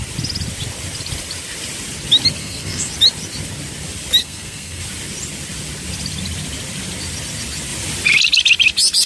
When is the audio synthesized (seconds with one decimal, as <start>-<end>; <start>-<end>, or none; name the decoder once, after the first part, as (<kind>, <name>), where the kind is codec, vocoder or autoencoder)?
2.4-2.9 (codec, SNAC); 4.2-4.8